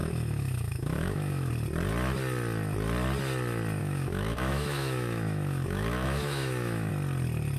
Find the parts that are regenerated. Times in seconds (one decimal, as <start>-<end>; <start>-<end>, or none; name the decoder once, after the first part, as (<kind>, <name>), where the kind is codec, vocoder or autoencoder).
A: 0.0-1.5 (autoencoder, DAC-VAE); 3.8-6.9